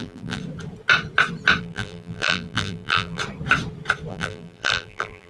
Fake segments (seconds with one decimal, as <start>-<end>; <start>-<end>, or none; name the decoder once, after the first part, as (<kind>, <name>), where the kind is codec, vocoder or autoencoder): 0.0-0.4 (vocoder, BigVGAN v2); 1.6-3.2; 4.1-5.3

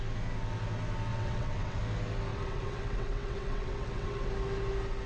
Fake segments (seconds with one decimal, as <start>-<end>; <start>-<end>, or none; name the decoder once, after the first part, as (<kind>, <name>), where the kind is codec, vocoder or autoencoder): 1.1-1.8 (vocoder, WaveNeXt); 2.3-4.3

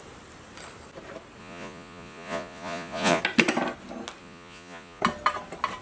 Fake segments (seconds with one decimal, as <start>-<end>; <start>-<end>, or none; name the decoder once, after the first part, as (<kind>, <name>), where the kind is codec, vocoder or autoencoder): 1.4-3.2 (vocoder, Vocos); 4.2-5.0

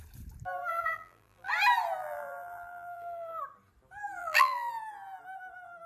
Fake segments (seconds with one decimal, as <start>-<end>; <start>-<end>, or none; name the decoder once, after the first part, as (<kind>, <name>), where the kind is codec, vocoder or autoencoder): 0.7-1.5 (vocoder, BigVGAN v2); 2.0-3.4; 4.2-4.7

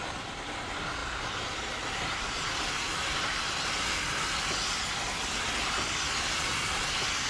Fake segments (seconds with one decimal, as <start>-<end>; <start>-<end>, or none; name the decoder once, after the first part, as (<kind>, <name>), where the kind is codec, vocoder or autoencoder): none

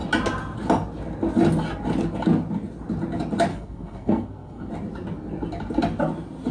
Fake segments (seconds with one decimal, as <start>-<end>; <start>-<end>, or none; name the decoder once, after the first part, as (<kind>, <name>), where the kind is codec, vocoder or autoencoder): 3.5-4.7 (codec, SNAC)

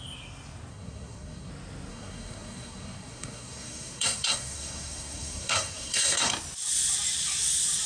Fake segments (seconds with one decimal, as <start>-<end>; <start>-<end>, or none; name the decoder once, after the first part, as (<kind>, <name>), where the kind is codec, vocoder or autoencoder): 0.7-1.5 (codec, SNAC); 1.9-6.3